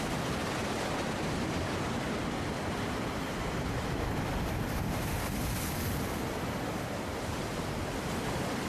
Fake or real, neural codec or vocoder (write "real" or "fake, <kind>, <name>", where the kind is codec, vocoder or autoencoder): real